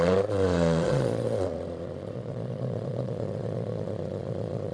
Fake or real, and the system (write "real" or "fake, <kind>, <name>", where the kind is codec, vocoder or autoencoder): fake, vocoder, Vocos